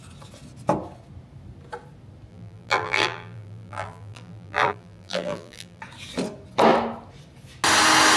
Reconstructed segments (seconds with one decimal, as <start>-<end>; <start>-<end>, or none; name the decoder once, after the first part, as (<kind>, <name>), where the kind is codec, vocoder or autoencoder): 2.3-5.8 (vocoder, BigVGAN v2)